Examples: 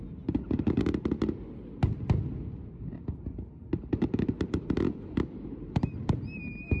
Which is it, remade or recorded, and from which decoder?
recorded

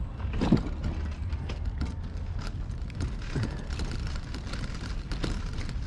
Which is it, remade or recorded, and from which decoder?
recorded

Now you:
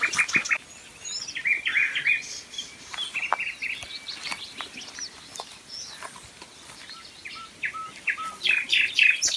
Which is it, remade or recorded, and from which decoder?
recorded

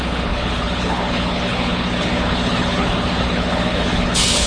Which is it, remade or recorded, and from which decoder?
remade, codec, HILCodec